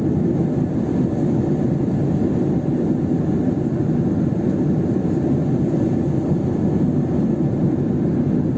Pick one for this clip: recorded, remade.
recorded